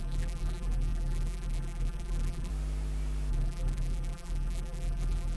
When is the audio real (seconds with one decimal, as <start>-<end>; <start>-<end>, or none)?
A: 2.5-3.3